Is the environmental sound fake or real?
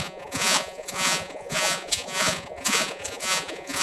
fake